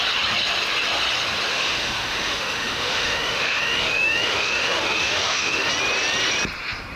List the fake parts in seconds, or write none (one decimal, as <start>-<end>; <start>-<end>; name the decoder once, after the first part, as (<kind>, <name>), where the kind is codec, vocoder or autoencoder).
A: 1.5-5.7 (autoencoder, DAC-VAE)